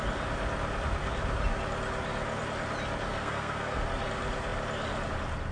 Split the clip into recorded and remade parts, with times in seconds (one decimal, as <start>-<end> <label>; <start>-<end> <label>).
0.0-3.1 recorded; 3.1-3.8 remade; 3.8-5.5 recorded